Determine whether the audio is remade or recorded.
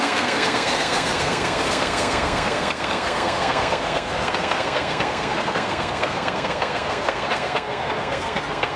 remade